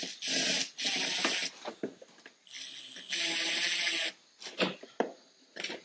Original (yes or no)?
yes